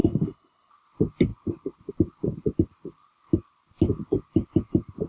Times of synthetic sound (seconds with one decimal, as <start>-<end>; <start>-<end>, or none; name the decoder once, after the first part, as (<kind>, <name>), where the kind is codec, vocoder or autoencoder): 0.0-0.7 (codec, HILCodec)

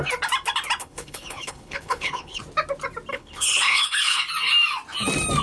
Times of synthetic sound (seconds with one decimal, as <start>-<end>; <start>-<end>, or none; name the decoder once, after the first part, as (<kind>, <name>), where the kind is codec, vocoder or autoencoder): 0.8-2.4 (codec, HILCodec); 3.1-4.2

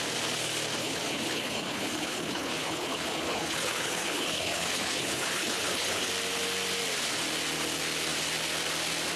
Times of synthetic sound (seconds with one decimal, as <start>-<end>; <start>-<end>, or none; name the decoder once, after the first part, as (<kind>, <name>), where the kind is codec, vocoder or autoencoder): 0.8-6.1 (codec, HILCodec)

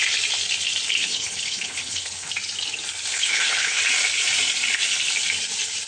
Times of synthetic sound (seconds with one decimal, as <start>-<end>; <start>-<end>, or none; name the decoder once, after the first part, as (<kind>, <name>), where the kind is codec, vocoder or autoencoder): 1.0-2.3 (codec, HILCodec); 3.1-3.8

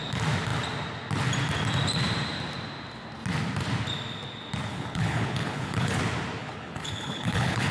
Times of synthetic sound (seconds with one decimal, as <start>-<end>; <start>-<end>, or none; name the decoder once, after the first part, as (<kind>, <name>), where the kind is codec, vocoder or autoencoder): 4.7-6.0 (codec, HILCodec); 6.4-7.7